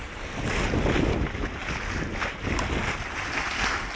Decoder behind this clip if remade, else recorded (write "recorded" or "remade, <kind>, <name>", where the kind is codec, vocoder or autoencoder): recorded